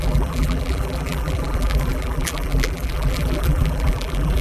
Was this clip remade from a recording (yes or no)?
yes